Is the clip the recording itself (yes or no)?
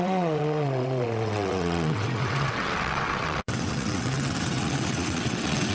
no